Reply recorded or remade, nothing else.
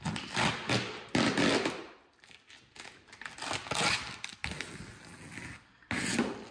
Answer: recorded